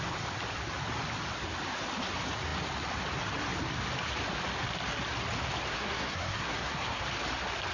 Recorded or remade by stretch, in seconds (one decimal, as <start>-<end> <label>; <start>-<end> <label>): 0.0-5.7 recorded; 5.7-7.0 remade; 7.0-7.7 recorded